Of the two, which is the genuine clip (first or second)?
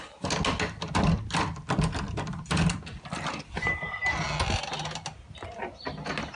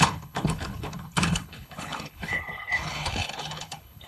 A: first